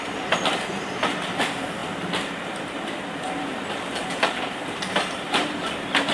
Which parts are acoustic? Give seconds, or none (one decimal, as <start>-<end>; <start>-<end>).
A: 1.8-2.3